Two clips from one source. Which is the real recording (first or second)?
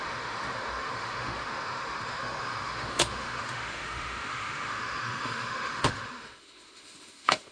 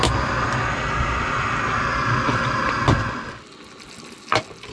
second